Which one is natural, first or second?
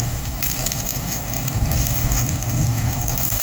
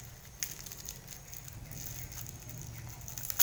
second